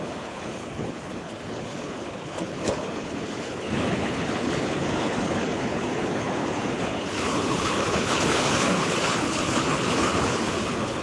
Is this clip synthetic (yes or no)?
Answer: yes